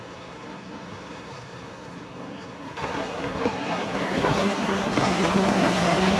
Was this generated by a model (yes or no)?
yes